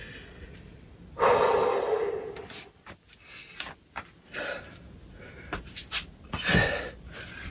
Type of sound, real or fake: real